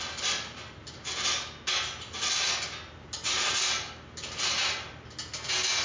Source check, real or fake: real